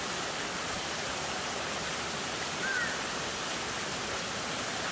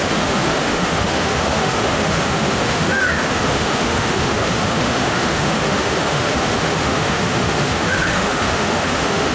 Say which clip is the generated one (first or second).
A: second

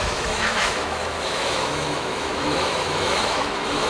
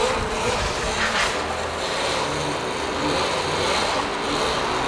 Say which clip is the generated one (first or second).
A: first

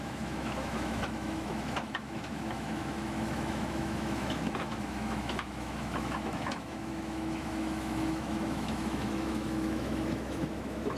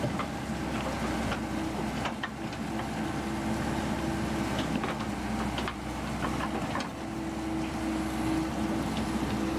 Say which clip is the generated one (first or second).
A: first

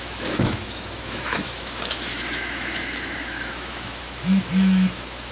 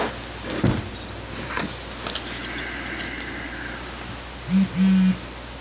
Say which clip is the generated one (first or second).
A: first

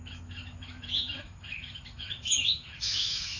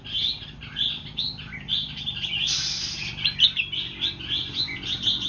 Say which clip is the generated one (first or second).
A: first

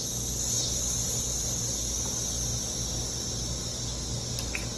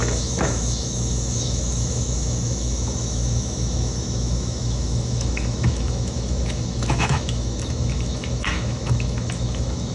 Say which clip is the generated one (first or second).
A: second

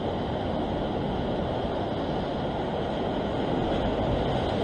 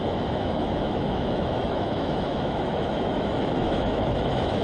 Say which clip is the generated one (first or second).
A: second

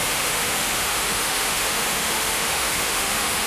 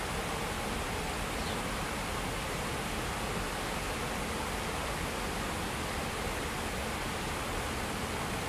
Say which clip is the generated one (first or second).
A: first